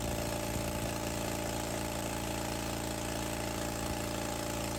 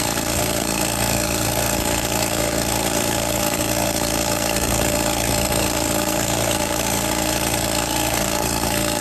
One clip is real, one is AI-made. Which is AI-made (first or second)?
second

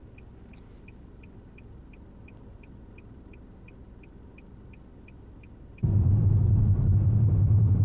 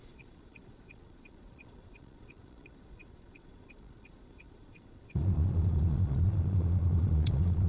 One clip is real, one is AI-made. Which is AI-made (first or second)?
second